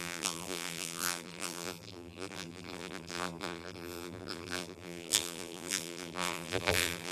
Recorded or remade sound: remade